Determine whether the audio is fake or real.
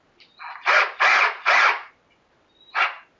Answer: real